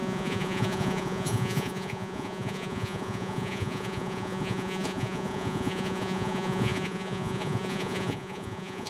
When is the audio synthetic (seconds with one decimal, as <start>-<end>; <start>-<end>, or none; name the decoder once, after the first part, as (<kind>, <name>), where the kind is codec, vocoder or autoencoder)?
0.0-8.9 (vocoder, Vocos)